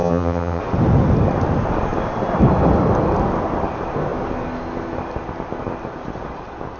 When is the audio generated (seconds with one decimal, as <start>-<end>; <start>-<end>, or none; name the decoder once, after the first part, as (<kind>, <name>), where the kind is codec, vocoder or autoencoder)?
0.0-0.6 (vocoder, HiFi-GAN)